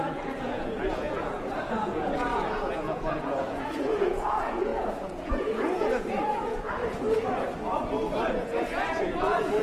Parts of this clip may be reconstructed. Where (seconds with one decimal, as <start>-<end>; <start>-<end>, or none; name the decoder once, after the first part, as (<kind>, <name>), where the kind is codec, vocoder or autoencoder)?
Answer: 0.0-6.8 (vocoder, Vocos); 8.3-9.6